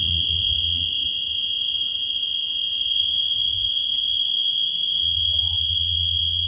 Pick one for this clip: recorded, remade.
remade